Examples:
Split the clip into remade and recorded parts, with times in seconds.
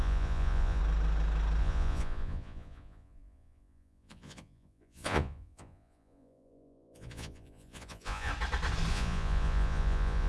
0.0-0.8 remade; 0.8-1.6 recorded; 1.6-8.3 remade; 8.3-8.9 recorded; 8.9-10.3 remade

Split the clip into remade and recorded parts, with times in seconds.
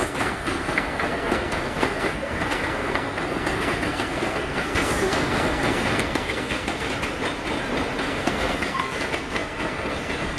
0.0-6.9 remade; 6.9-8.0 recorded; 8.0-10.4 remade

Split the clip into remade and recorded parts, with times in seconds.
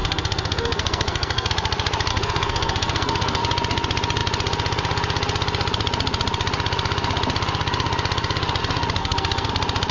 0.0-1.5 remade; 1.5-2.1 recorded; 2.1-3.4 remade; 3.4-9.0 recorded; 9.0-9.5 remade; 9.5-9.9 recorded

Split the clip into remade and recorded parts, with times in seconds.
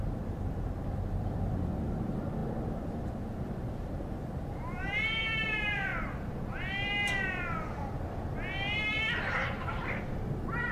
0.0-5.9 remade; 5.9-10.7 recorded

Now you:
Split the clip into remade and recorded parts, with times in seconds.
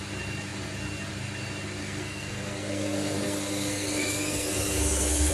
0.0-1.8 recorded; 1.8-5.3 remade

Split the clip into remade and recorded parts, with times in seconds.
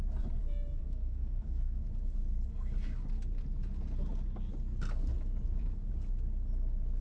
0.0-0.8 recorded; 0.8-1.8 remade; 1.8-7.0 recorded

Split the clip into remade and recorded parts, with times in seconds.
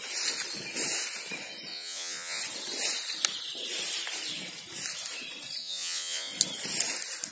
0.0-1.7 recorded; 1.7-2.4 remade; 2.4-5.6 recorded; 5.6-6.3 remade; 6.3-7.3 recorded